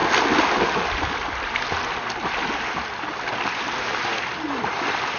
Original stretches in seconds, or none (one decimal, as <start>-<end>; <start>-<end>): 0.0-5.2